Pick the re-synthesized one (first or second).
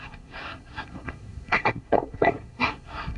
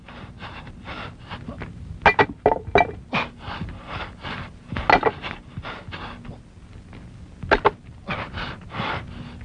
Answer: first